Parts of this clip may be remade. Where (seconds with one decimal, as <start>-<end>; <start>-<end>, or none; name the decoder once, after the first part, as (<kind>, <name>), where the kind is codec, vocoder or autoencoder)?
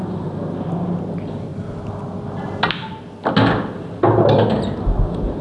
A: none